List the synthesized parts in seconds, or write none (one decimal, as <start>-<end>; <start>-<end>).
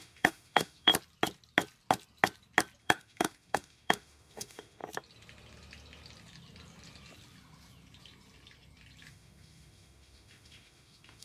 0.0-0.9; 2.8-4.8; 9.1-11.2